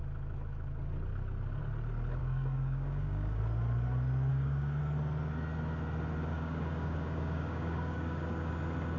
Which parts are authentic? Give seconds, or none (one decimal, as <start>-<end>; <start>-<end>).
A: 0.0-2.2; 3.4-4.3; 4.8-6.3; 8.5-9.0